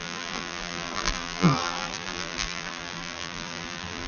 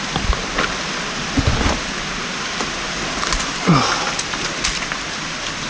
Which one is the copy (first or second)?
first